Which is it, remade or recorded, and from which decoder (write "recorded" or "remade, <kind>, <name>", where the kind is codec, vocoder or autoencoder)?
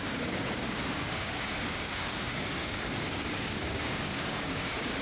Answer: remade, codec, DAC